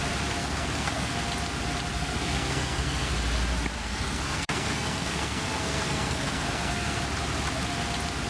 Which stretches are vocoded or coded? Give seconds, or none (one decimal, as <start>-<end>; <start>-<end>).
0.4-1.1; 1.9-3.1; 3.8-7.0